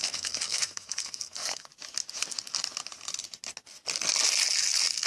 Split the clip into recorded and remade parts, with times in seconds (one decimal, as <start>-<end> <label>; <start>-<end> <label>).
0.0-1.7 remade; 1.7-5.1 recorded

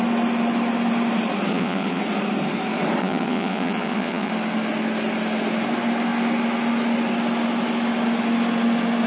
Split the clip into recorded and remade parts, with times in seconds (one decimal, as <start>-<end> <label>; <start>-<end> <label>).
0.0-1.5 recorded; 1.5-2.0 remade; 2.0-3.0 recorded; 3.0-4.3 remade; 4.3-9.1 recorded

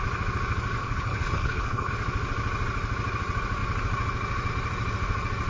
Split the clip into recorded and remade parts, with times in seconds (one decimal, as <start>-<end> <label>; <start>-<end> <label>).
0.0-0.8 recorded; 0.8-1.9 remade; 1.9-5.5 recorded

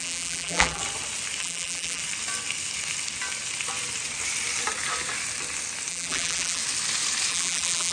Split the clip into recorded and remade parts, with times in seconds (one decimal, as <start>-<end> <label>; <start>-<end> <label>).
0.0-0.8 remade; 0.8-1.4 recorded; 1.4-2.0 remade; 2.0-5.9 recorded; 5.9-6.6 remade; 6.6-7.3 recorded; 7.3-7.9 remade

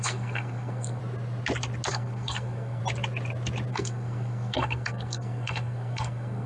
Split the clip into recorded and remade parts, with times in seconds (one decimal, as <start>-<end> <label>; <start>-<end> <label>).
0.0-1.0 remade; 1.0-1.9 recorded; 1.9-2.8 remade; 2.8-3.7 recorded; 3.7-6.5 remade

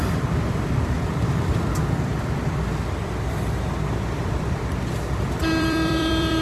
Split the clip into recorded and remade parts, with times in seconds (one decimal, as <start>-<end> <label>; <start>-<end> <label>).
0.0-6.4 remade

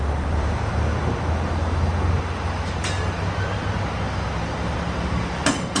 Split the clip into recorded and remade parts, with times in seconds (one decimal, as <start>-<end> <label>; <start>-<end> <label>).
0.0-0.9 remade; 0.9-4.4 recorded; 4.4-5.8 remade